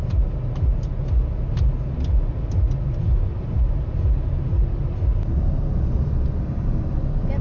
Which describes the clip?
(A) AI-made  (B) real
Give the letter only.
B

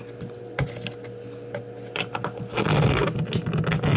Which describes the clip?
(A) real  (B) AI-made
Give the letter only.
A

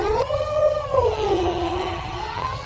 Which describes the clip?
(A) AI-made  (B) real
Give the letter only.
A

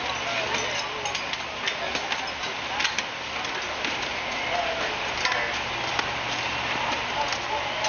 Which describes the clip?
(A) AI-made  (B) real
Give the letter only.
B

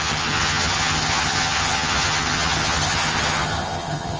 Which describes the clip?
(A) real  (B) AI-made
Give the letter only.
B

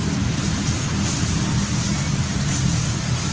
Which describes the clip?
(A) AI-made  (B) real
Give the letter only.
B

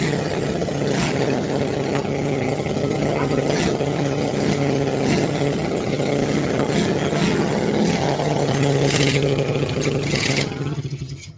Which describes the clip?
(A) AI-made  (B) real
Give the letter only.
A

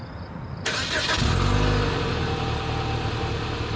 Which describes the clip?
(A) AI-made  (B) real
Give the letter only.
B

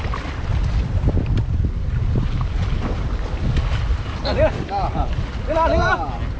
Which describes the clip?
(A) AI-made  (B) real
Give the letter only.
B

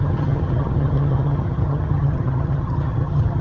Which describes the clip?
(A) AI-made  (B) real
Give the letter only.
A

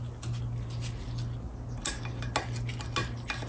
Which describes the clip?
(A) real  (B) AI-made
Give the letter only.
A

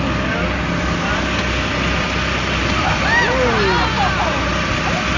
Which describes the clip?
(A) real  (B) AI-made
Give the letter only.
A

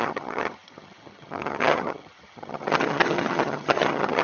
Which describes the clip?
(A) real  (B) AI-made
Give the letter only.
B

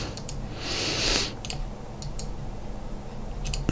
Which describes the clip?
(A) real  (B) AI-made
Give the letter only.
A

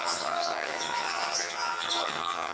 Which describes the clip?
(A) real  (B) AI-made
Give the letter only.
B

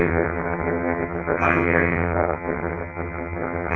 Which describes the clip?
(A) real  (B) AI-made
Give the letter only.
B